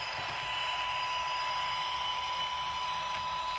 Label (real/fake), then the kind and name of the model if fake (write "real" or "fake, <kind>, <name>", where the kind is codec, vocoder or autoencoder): real